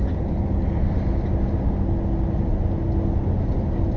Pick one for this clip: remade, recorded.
recorded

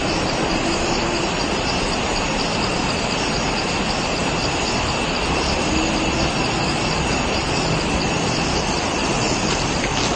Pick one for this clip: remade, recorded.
recorded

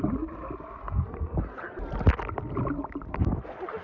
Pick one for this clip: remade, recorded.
recorded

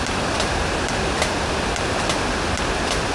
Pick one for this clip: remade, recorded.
recorded